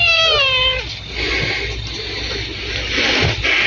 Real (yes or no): yes